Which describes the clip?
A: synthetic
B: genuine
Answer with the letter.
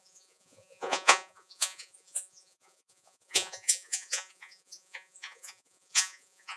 A